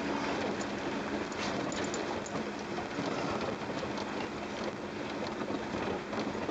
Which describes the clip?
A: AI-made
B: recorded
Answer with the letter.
B